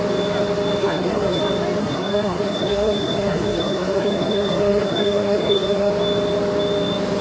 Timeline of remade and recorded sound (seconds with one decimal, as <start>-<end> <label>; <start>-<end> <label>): 0.0-0.8 recorded; 0.8-1.4 remade; 1.4-1.8 recorded; 1.8-5.9 remade; 5.9-7.2 recorded